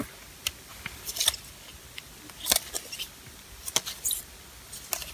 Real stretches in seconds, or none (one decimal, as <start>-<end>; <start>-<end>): 0.0-0.7; 1.2-5.1

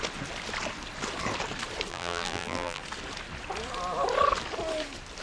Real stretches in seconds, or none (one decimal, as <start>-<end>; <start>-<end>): 0.0-1.9; 2.8-5.2

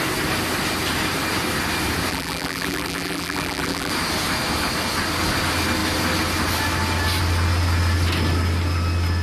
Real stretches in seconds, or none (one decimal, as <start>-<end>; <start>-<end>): 0.0-2.1; 3.9-9.2